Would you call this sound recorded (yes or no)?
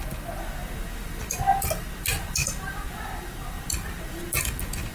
yes